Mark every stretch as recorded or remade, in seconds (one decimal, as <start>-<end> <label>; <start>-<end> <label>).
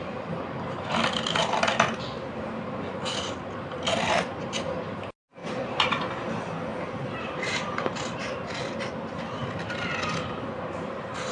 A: 0.0-5.4 recorded; 5.4-6.0 remade; 6.0-6.7 recorded; 6.7-8.6 remade; 8.6-11.3 recorded